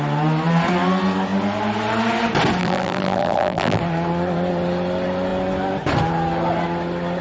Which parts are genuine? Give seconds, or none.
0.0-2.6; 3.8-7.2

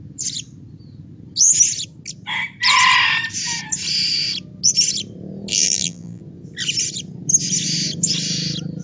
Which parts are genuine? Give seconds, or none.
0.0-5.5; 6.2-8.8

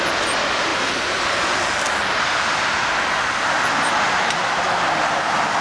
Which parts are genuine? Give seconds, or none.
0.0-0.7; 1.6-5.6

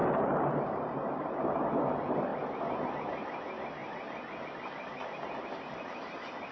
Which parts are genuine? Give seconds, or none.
1.4-4.9

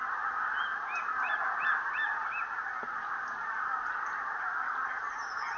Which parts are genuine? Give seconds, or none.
0.0-2.2; 3.9-5.6

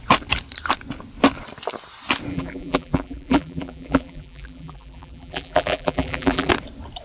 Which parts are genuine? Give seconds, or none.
0.0-2.3; 6.5-7.0